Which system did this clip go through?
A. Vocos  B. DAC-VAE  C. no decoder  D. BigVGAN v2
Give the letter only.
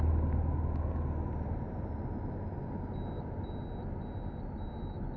C